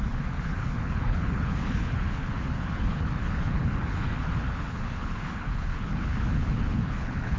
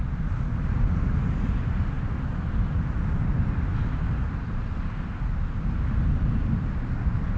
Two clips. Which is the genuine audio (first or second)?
second